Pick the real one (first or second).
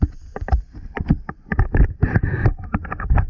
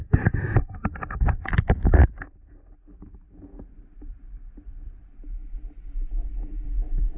second